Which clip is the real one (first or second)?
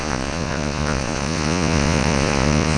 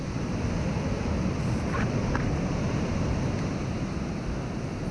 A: second